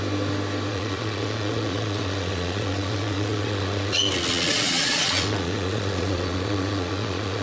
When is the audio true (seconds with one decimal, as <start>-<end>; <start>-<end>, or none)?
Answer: 0.0-0.7